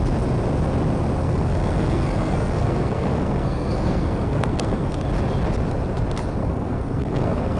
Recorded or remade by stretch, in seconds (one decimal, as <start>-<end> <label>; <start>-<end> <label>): 0.0-1.2 recorded; 1.2-5.0 remade; 5.0-6.4 recorded; 6.4-7.6 remade